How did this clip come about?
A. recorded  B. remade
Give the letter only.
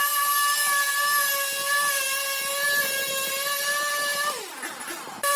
A